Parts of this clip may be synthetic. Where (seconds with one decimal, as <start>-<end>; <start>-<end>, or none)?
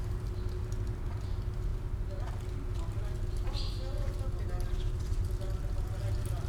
none